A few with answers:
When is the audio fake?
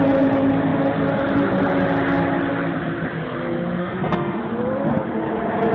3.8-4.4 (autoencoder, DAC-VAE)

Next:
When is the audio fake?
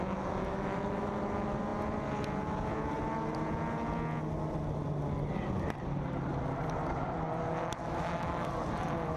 0.5-1.1 (autoencoder, DAC-VAE); 7.8-8.5